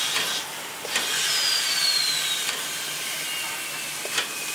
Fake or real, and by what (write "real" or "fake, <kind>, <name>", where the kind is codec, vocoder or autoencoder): real